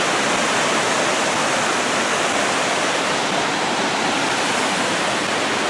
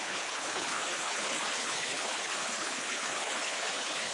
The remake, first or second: second